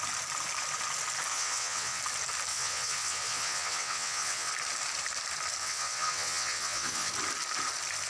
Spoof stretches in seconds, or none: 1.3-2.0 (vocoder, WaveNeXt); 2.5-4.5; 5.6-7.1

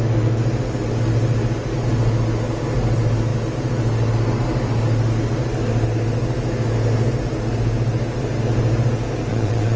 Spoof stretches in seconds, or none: 9.3-9.8 (vocoder, Vocos)